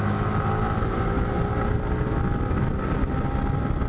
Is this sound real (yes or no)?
yes